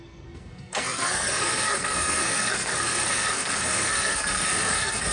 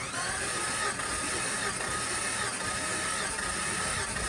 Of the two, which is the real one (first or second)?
second